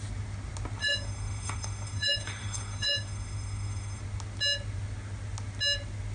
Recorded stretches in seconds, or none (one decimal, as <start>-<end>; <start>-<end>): 0.0-0.8; 4.0-6.1